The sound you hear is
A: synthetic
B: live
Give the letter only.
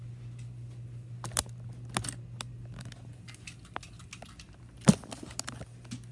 B